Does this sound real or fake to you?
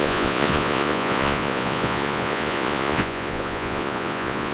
fake